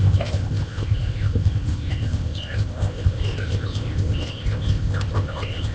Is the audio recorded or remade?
remade